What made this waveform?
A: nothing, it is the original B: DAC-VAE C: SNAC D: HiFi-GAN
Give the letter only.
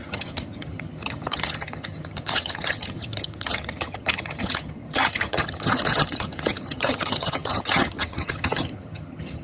D